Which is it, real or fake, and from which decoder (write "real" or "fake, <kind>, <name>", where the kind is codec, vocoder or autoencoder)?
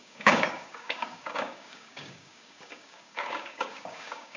fake, codec, DAC